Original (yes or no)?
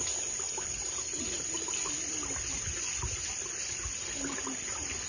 yes